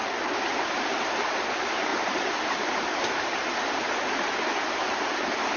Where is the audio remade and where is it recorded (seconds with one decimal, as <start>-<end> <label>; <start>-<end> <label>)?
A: 0.0-0.5 recorded; 0.5-5.6 remade